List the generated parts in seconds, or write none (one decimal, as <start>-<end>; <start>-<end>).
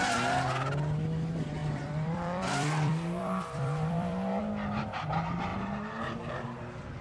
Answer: 1.6-4.4